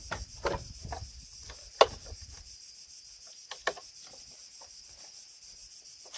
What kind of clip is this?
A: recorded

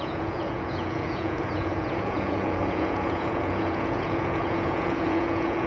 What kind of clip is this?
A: remade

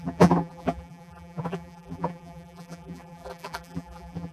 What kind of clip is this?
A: remade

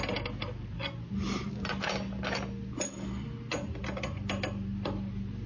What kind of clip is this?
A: recorded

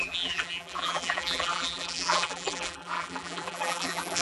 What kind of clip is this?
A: remade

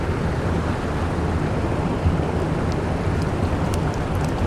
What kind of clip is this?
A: recorded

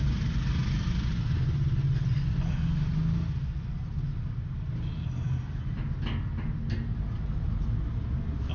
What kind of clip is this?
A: recorded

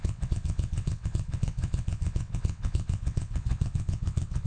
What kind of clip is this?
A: remade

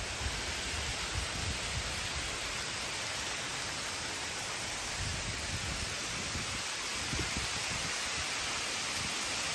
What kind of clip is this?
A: recorded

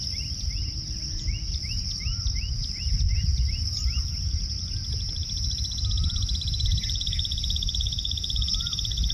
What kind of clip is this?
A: recorded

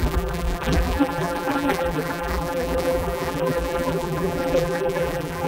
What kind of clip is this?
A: remade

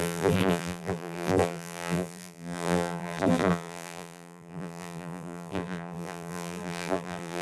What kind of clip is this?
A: remade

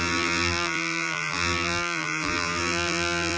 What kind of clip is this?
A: remade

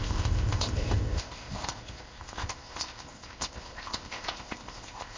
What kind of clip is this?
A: remade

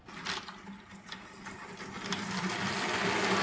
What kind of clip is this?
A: recorded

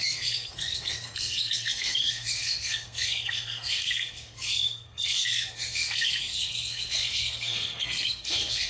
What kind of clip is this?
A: remade